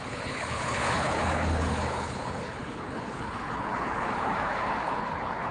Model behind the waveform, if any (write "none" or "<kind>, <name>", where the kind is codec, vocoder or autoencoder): codec, HILCodec